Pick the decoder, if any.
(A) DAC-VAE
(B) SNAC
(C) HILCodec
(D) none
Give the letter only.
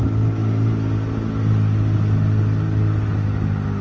D